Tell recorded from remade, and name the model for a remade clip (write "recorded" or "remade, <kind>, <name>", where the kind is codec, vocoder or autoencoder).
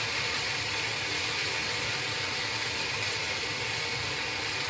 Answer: recorded